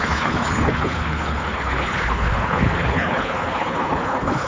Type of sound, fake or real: fake